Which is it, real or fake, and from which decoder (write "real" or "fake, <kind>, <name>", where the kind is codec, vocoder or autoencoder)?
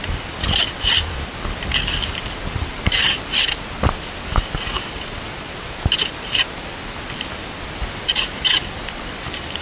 real